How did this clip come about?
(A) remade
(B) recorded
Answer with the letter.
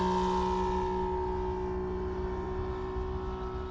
B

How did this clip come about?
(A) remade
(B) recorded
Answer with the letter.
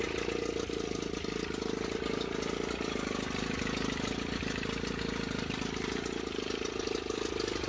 B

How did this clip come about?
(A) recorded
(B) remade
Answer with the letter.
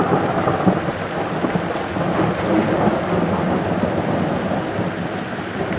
A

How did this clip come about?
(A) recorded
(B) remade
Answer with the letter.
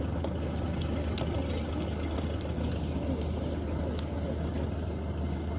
A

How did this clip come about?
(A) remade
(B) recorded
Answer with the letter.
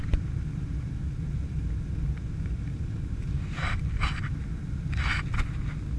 B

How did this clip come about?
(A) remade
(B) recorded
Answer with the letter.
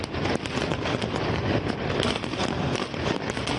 B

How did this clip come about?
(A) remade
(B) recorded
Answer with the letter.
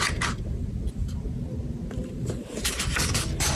B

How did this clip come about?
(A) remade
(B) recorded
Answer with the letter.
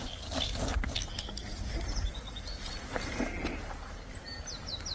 B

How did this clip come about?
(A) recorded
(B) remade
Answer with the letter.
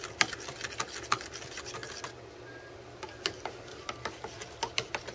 A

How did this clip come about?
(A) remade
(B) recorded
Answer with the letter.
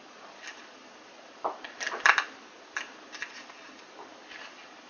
B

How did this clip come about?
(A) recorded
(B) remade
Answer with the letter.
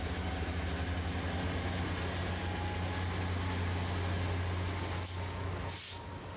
A